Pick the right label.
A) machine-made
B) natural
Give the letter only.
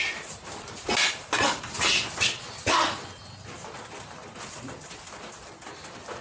B